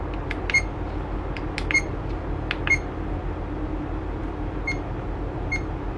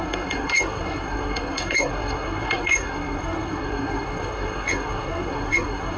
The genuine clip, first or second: first